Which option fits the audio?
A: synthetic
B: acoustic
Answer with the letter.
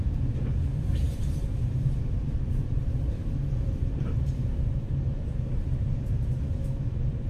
A